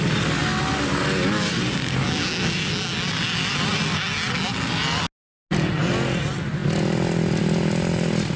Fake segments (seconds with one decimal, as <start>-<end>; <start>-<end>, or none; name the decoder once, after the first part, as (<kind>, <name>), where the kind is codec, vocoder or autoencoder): none